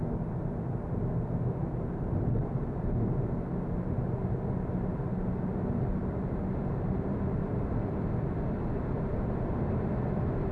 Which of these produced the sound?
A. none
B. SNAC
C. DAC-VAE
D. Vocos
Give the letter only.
A